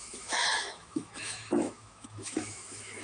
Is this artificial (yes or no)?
yes